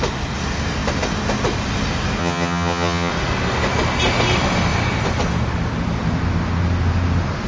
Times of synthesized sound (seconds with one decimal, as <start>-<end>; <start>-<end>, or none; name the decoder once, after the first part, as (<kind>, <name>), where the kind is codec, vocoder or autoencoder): 2.2-3.1 (vocoder, HiFi-GAN)